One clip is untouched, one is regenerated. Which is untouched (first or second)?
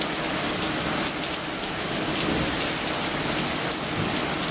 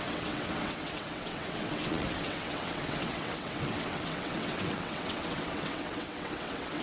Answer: first